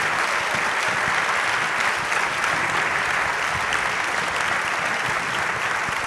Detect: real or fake real